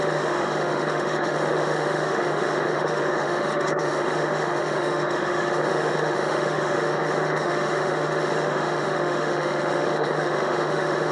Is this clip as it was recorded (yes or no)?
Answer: no